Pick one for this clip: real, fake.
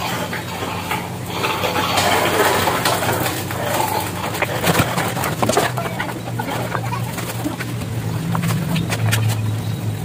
real